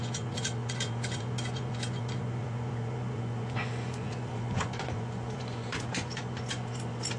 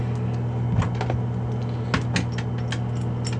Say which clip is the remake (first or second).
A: first